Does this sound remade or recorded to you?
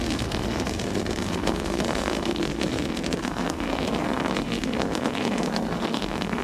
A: remade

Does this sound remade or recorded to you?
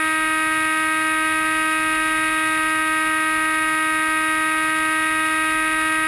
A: recorded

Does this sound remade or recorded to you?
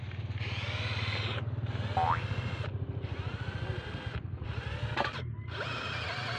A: recorded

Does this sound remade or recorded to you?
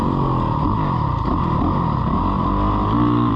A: recorded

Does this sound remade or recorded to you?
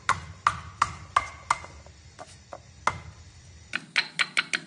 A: recorded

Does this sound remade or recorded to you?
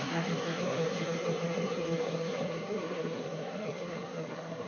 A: remade